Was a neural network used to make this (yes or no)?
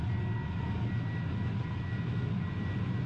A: no